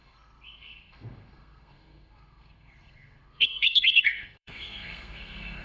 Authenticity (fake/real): fake